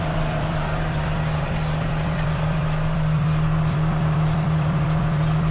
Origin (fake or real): fake